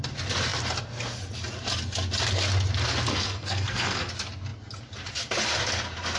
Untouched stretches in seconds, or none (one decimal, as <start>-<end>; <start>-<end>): 0.0-3.1; 4.1-6.2